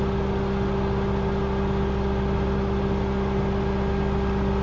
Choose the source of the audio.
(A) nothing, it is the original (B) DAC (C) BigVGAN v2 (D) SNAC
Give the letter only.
A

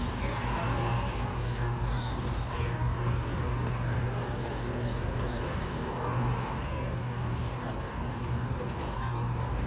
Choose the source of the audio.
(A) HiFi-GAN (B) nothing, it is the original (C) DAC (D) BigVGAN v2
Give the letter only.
C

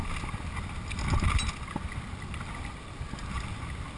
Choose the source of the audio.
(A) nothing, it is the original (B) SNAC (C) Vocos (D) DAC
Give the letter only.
A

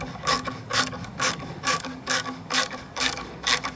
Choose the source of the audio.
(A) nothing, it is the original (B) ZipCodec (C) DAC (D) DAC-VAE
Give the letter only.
C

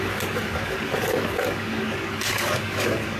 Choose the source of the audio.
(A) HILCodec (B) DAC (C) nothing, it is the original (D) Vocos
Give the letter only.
B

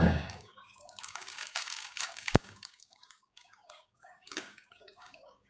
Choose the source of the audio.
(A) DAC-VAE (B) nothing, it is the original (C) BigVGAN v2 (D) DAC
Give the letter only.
D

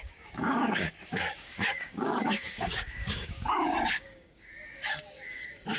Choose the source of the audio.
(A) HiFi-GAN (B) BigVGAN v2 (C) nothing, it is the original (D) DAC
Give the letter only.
D